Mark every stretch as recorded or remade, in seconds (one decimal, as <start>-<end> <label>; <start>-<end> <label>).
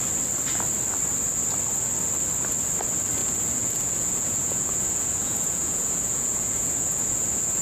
0.0-3.2 recorded; 3.2-7.6 remade